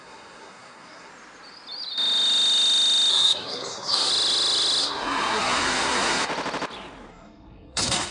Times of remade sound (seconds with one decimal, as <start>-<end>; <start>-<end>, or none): 0.0-1.1; 3.1-4.1; 4.8-6.3; 7.1-8.1